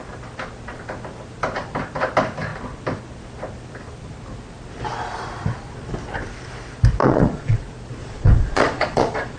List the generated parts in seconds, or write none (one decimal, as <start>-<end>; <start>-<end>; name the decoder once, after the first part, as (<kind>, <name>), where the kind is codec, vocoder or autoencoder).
7.0-7.6 (vocoder, Vocos); 8.0-9.4

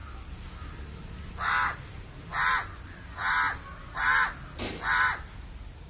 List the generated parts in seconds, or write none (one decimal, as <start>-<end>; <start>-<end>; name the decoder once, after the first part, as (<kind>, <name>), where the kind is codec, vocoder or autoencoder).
none

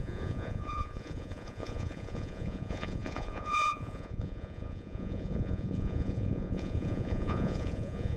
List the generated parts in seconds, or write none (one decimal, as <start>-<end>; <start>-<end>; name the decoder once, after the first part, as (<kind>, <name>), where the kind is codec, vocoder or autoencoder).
0.0-8.2 (vocoder, Vocos)